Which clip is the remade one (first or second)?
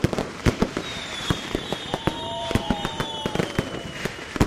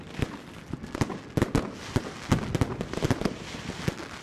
first